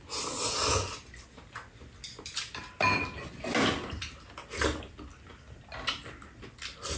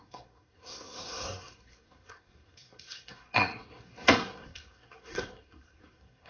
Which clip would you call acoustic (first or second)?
first